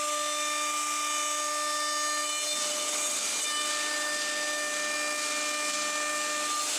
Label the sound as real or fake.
real